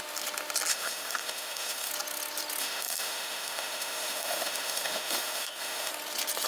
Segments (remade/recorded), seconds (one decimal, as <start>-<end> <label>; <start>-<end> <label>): 0.0-0.7 recorded; 0.7-1.9 remade; 1.9-2.6 recorded; 2.6-5.9 remade; 5.9-6.5 recorded